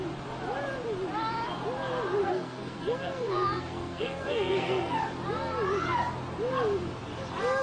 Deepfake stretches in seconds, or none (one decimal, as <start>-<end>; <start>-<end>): 2.2-5.0